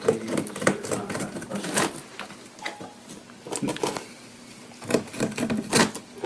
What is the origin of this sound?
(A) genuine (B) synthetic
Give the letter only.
A